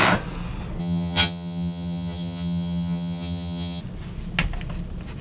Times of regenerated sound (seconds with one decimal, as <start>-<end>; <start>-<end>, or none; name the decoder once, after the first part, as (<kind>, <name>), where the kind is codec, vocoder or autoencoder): 0.8-3.8 (vocoder, HiFi-GAN)